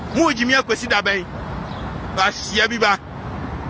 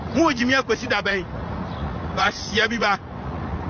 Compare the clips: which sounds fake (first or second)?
second